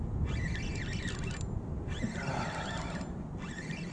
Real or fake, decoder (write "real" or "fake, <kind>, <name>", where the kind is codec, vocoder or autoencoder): real